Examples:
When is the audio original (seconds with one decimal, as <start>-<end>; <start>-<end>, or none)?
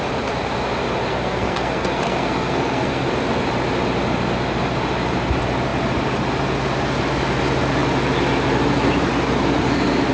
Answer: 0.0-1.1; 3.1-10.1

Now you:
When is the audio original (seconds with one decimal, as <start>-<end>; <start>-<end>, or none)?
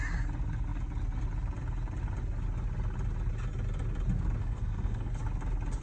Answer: 0.0-4.4; 5.1-5.8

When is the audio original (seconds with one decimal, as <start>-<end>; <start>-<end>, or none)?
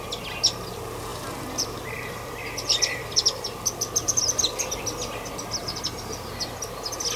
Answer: 0.0-1.1; 4.8-5.6; 6.3-7.2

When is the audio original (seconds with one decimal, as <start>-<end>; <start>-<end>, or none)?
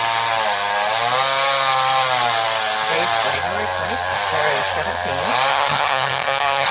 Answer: 0.0-5.5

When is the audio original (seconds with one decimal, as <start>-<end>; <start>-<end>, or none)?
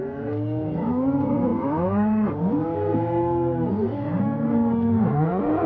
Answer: 0.0-5.7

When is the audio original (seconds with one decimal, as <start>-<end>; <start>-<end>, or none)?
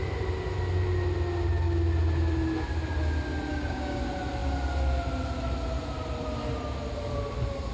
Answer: 0.0-3.5; 4.0-7.7